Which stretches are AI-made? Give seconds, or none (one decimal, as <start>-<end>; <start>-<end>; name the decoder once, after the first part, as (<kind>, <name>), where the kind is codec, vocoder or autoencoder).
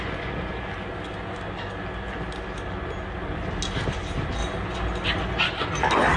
none